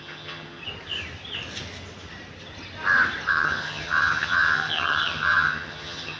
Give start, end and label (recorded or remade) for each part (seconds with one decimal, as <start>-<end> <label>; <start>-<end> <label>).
0.0-0.6 remade; 0.6-3.3 recorded; 3.3-6.2 remade